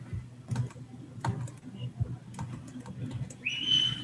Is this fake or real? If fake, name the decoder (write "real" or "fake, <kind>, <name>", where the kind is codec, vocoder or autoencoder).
fake, vocoder, BigVGAN v2